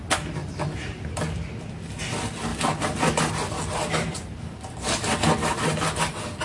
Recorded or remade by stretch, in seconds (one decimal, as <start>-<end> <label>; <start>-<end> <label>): 0.0-0.4 recorded; 0.4-1.1 remade; 1.1-6.4 recorded